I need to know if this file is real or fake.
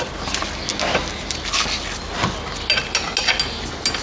real